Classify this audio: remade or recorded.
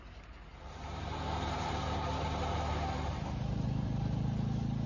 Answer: remade